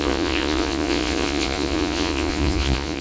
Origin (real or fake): fake